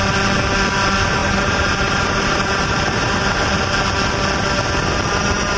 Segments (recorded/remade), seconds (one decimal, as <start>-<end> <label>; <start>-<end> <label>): 0.0-1.2 recorded; 1.2-3.2 remade; 3.2-5.6 recorded